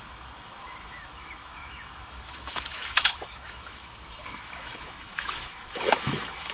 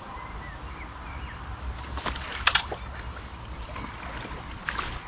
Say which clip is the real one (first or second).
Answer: second